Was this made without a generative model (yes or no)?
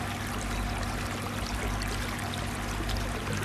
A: yes